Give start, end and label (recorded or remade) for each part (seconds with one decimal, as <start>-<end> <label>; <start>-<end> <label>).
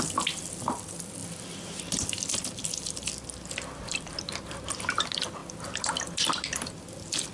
0.0-7.3 recorded